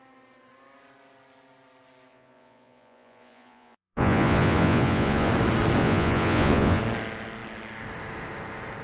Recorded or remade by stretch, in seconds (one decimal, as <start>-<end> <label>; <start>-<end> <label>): 0.0-2.1 recorded; 2.1-5.3 remade; 5.3-5.8 recorded; 5.8-6.8 remade; 6.8-8.8 recorded